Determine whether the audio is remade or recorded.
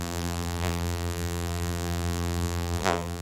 remade